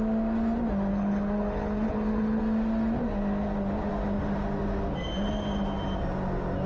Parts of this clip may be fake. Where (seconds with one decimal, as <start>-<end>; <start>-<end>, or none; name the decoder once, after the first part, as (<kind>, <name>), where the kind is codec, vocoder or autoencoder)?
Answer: 0.9-2.4 (codec, HILCodec)